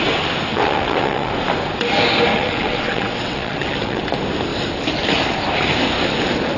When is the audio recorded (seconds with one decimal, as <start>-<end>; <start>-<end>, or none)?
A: 0.0-0.5; 1.3-2.3; 4.0-6.6